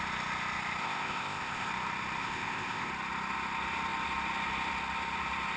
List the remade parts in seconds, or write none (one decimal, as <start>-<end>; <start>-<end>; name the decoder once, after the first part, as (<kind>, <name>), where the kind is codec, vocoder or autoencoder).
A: 0.8-1.7 (codec, ZipCodec); 2.2-2.9